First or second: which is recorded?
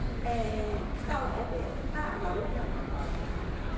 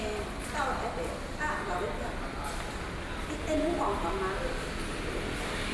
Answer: second